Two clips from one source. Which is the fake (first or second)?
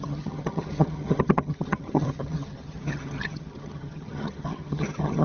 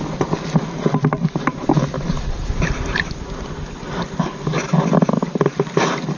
first